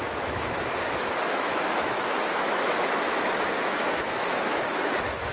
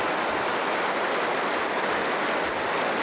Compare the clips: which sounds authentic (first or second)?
second